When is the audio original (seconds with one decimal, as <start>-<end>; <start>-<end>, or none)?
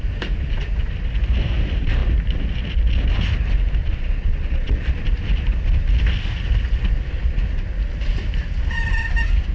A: 0.0-3.8; 4.8-9.5